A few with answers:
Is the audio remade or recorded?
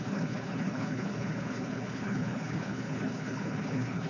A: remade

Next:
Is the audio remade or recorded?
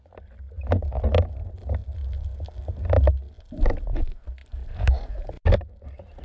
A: recorded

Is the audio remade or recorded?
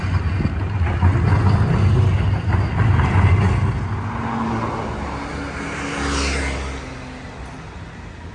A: recorded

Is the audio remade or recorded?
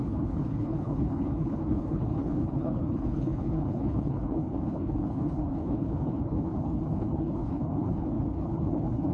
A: remade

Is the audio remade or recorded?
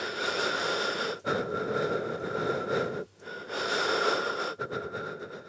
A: recorded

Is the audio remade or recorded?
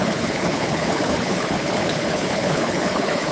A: remade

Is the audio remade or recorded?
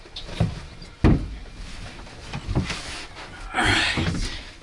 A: recorded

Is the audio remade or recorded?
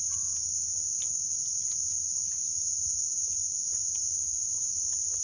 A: recorded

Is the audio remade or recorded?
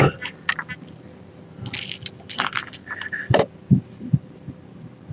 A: recorded